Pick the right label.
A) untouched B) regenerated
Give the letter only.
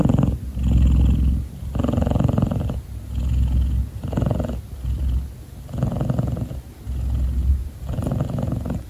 A